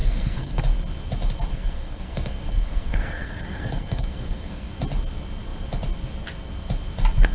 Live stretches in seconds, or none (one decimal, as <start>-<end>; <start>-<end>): 0.6-1.5; 4.7-7.3